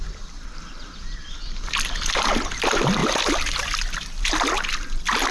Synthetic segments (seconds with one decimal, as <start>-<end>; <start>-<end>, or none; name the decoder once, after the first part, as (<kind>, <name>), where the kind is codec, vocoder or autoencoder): none